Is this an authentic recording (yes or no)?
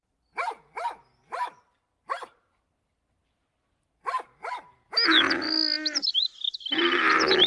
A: yes